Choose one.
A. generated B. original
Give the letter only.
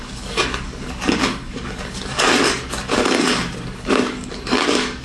A